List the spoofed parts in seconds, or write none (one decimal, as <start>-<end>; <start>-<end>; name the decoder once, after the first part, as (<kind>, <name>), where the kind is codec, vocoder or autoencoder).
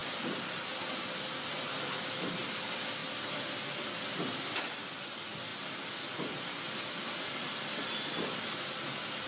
none